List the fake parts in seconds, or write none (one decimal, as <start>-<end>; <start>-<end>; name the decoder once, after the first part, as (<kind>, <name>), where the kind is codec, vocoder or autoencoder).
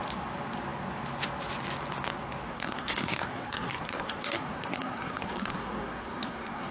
2.5-6.7 (codec, SNAC)